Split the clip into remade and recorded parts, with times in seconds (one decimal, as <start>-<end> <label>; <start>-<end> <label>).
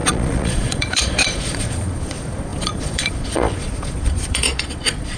0.0-5.2 remade